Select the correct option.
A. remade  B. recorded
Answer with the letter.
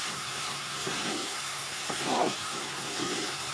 A